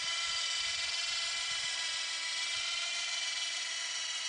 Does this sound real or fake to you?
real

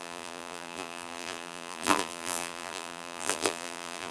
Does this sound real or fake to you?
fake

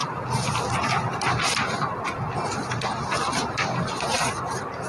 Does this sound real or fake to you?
real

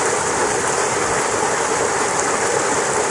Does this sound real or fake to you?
real